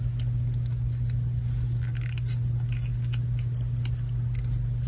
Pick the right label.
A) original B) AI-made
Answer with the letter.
A